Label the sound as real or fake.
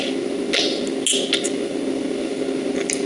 real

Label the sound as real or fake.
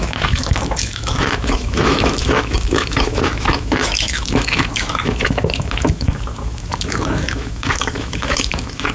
fake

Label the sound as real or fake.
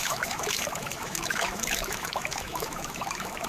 fake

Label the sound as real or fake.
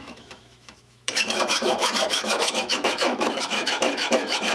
fake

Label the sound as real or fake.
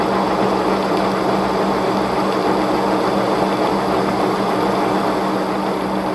real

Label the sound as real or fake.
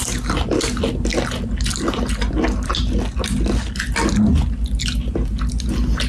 real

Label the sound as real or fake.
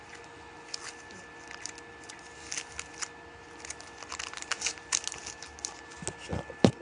real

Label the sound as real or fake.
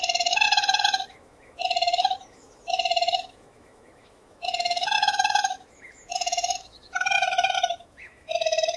fake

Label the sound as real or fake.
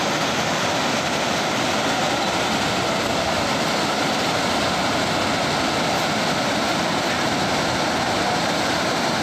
real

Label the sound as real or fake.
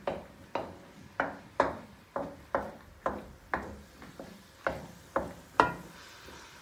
real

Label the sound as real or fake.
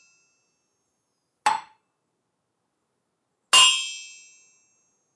real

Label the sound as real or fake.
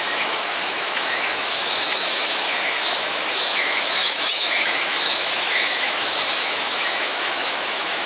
fake